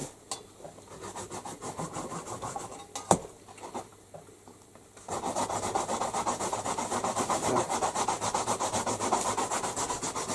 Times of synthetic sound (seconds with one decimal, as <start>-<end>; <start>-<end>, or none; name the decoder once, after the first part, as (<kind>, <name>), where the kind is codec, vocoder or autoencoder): none